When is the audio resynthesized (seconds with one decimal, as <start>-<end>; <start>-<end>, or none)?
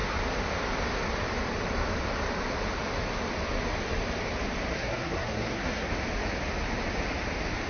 4.7-5.9